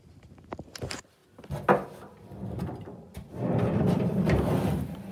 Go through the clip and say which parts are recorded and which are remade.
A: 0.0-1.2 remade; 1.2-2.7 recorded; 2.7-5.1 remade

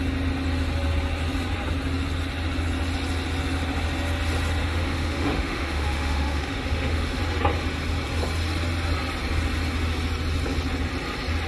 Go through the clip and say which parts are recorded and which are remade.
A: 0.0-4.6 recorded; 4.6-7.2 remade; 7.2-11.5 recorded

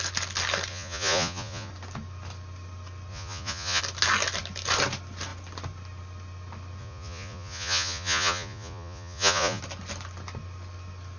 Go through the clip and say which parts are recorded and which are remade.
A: 0.0-0.7 recorded; 0.7-1.7 remade; 1.7-3.1 recorded; 3.1-3.8 remade; 3.8-6.8 recorded; 6.8-9.6 remade; 9.6-11.2 recorded

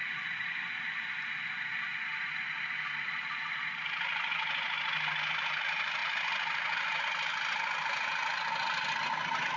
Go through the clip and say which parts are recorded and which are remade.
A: 0.0-9.6 recorded

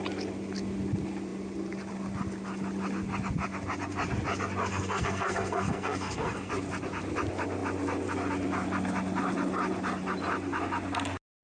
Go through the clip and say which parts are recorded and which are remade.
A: 0.0-4.7 recorded; 4.7-6.5 remade; 6.5-11.4 recorded

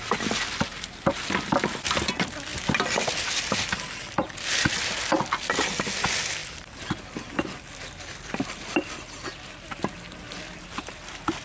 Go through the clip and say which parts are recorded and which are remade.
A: 0.0-11.4 recorded

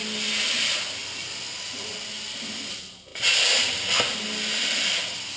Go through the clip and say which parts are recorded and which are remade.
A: 0.0-5.4 recorded

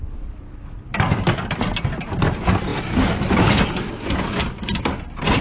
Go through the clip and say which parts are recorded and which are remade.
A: 0.0-0.9 recorded; 0.9-1.8 remade; 1.8-2.7 recorded; 2.7-3.7 remade; 3.7-4.4 recorded; 4.4-5.0 remade; 5.0-5.4 recorded